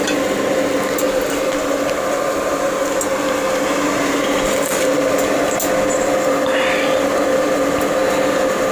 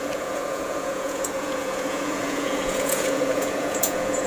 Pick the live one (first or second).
first